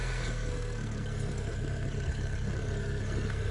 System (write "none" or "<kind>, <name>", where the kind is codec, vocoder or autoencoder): codec, SNAC